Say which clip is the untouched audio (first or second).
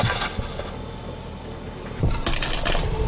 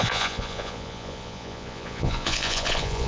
first